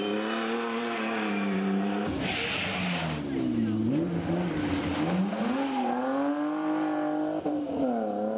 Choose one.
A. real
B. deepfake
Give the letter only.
A